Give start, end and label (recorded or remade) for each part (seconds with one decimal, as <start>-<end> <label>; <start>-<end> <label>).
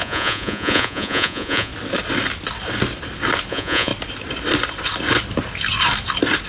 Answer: 0.0-1.7 remade; 1.7-3.5 recorded; 3.5-3.9 remade; 3.9-6.5 recorded